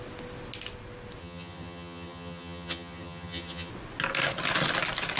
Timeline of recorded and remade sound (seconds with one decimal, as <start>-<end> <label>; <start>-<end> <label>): 0.0-1.2 recorded; 1.2-3.7 remade; 3.7-5.2 recorded